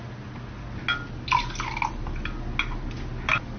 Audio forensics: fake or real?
real